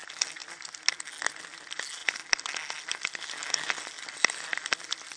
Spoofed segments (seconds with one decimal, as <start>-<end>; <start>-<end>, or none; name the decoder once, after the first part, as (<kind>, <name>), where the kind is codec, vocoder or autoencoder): none